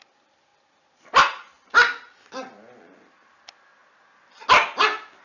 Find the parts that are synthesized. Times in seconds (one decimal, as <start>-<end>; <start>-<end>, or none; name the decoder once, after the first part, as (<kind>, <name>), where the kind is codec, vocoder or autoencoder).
0.0-0.5 (vocoder, BigVGAN v2); 2.3-3.8